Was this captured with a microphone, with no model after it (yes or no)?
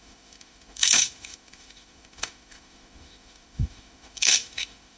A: no